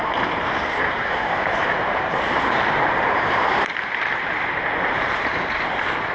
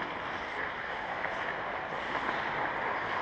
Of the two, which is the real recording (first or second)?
second